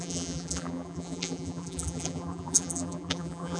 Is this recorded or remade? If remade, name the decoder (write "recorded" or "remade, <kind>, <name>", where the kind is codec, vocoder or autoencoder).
remade, vocoder, BigVGAN v2